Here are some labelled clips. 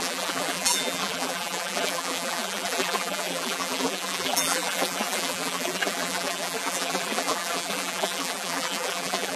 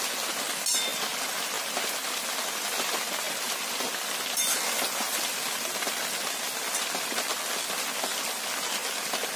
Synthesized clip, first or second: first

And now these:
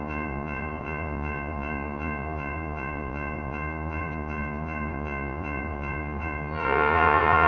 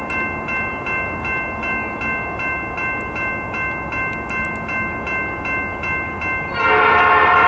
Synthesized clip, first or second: first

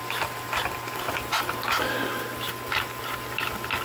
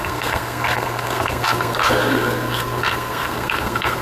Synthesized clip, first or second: second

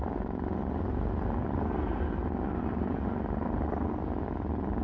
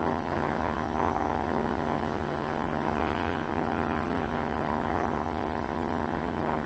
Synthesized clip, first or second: second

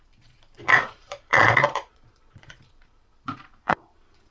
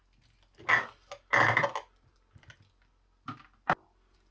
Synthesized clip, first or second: first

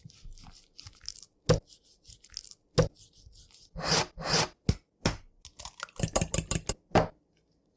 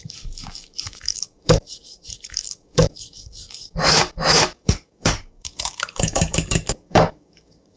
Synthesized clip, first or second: second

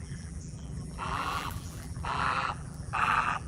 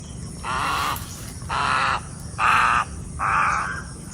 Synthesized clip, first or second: first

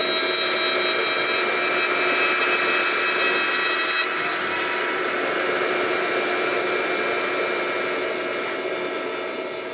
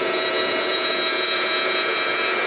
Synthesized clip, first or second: second